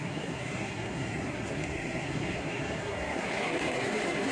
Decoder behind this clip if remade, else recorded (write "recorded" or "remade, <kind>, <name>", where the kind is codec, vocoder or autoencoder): remade, codec, SNAC